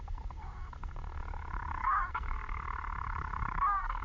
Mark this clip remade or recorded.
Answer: remade